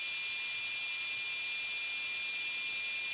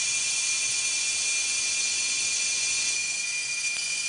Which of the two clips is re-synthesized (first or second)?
second